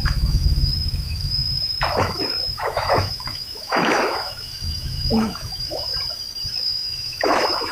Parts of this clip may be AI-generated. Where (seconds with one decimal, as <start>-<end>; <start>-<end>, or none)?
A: 0.0-5.9; 6.5-7.7